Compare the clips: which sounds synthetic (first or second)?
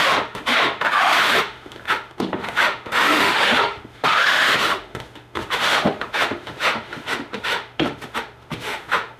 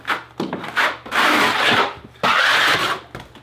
first